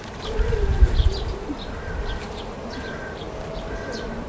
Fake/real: fake